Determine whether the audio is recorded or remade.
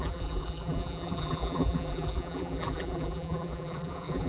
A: remade